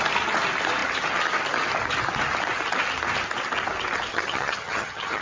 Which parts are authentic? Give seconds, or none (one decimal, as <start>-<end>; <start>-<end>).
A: 0.0-4.1